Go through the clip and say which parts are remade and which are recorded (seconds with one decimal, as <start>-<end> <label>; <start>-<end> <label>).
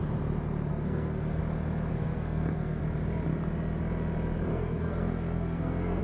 0.0-0.7 recorded; 0.7-1.4 remade; 1.4-1.9 recorded; 1.9-2.8 remade; 2.8-4.5 recorded; 4.5-6.0 remade